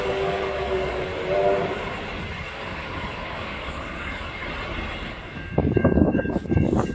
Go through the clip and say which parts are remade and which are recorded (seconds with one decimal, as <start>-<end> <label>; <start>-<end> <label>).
0.0-1.1 remade; 1.1-2.5 recorded; 2.5-4.4 remade; 4.4-5.1 recorded; 5.1-6.9 remade